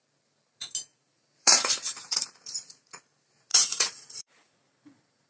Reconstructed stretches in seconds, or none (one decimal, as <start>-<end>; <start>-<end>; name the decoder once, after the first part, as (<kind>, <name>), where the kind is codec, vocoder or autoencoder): 0.9-3.0 (vocoder, Vocos); 3.5-5.3